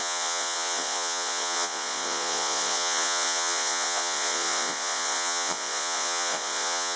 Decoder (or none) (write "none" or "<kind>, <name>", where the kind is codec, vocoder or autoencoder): vocoder, Vocos